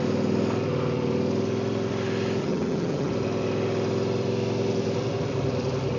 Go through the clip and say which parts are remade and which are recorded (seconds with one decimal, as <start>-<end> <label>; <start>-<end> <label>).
0.0-2.4 recorded; 2.4-3.1 remade; 3.1-6.0 recorded